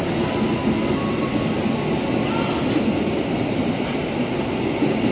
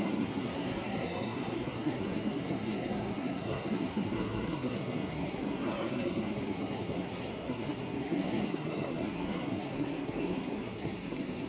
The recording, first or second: first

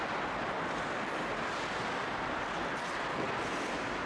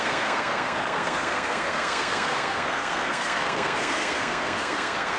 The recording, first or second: first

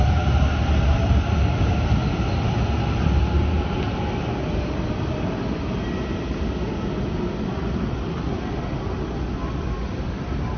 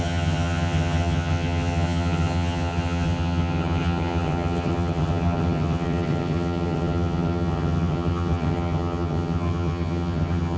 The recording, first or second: first